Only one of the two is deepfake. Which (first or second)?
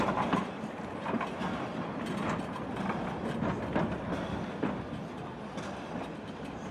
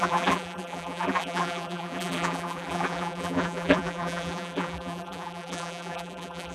second